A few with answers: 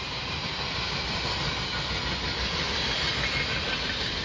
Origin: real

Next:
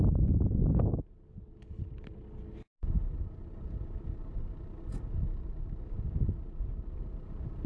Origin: real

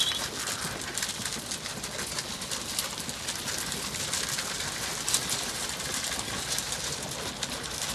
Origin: real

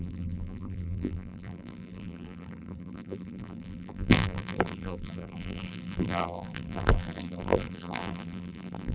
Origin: fake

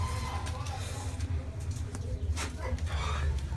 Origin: real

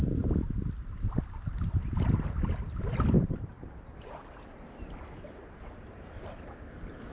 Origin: real